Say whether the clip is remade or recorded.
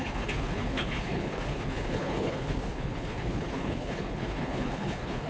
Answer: remade